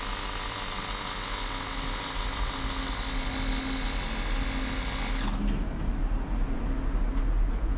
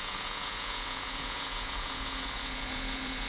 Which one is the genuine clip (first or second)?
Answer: first